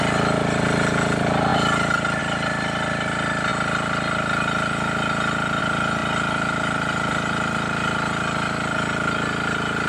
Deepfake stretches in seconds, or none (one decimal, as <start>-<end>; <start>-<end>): none